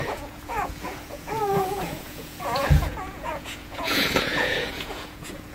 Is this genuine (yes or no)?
no